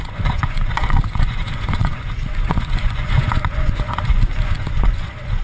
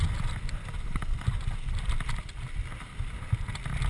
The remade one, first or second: first